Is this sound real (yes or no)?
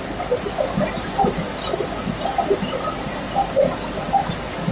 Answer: yes